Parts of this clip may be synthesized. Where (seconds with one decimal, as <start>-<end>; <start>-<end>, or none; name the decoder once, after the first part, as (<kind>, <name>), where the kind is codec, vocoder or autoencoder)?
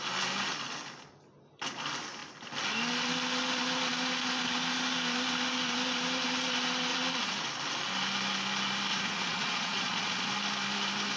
6.9-7.4 (vocoder, Vocos); 8.9-10.3